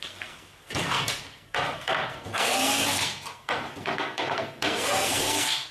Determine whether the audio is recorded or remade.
remade